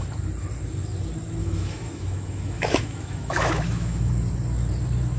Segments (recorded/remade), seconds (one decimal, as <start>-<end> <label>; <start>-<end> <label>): 0.0-1.4 recorded; 1.4-4.1 remade; 4.1-5.2 recorded